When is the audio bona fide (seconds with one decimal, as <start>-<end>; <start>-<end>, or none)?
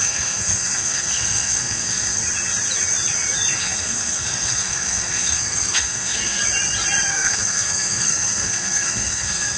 2.2-3.6; 6.4-7.1